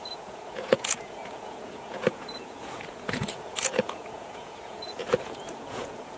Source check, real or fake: fake